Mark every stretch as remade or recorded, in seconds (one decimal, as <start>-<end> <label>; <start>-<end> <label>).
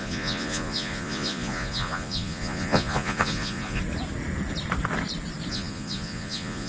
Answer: 0.0-3.8 remade; 3.8-5.5 recorded; 5.5-6.7 remade